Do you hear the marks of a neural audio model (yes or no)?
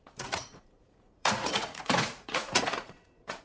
yes